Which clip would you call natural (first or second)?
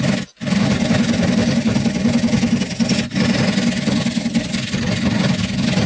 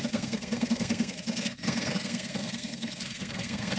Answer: first